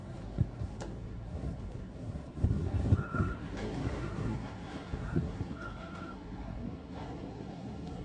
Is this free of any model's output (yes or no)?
no